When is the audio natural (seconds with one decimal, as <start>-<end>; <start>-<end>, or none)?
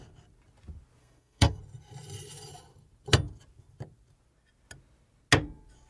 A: 0.0-1.0; 1.6-5.9